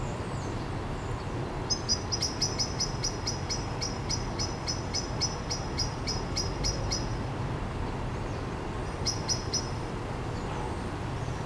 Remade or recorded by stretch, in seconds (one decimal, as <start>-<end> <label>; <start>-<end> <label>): 0.0-11.5 recorded